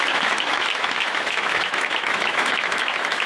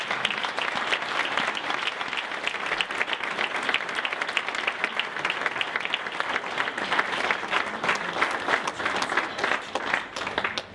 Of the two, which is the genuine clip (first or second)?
second